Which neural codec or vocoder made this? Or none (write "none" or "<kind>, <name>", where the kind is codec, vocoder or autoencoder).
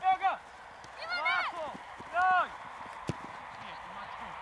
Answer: none